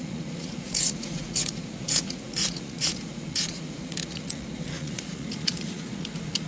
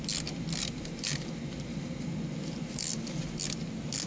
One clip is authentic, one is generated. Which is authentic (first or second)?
second